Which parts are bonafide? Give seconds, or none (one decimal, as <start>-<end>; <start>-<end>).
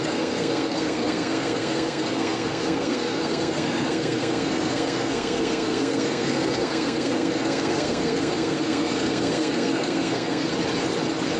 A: 10.5-11.4